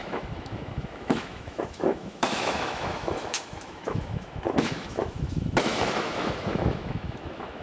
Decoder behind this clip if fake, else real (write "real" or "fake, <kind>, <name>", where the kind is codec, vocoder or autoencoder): fake, autoencoder, DAC-VAE